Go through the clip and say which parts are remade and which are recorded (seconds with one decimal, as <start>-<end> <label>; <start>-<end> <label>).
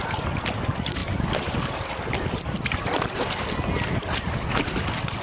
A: 0.0-5.2 recorded